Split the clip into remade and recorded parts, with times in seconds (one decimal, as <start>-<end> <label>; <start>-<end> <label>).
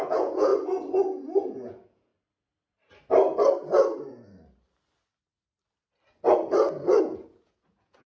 0.0-0.5 remade; 0.5-1.0 recorded; 1.0-2.1 remade; 2.1-7.0 recorded; 7.0-8.2 remade